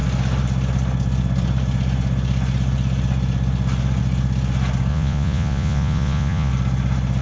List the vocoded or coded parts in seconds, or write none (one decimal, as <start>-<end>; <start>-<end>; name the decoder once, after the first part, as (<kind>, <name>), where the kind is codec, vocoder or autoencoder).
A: 4.9-6.5 (vocoder, Vocos)